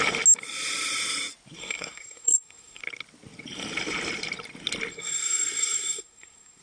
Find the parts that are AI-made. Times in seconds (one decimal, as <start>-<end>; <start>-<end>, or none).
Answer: 1.6-2.8; 4.9-6.6